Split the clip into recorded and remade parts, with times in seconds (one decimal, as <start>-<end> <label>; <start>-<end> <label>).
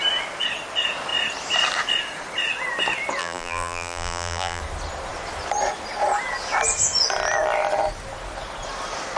0.0-3.2 recorded; 3.2-4.6 remade; 4.6-9.2 recorded